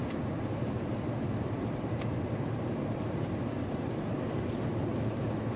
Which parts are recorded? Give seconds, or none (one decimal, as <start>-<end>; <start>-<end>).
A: 3.4-5.6